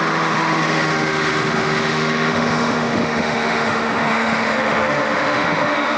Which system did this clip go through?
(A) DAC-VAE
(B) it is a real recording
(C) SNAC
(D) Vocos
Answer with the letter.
A